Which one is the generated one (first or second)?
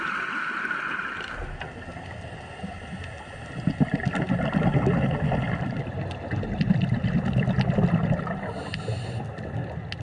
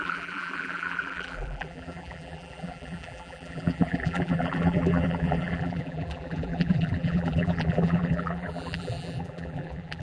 second